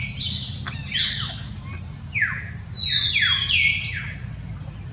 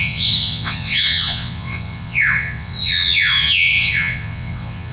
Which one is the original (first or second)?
first